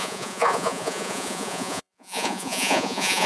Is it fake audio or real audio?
fake